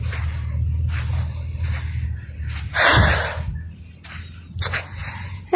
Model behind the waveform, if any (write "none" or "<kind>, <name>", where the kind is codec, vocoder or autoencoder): none